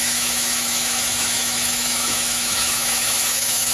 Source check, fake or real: fake